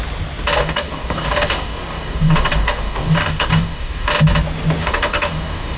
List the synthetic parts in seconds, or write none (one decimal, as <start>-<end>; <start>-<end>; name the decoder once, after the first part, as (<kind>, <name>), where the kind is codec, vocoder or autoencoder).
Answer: 0.6-4.1 (codec, DAC); 4.8-5.8